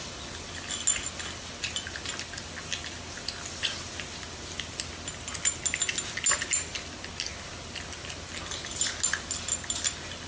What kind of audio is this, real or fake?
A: real